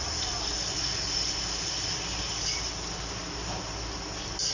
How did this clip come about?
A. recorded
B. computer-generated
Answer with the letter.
A